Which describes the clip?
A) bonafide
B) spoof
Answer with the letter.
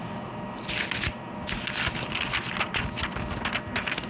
A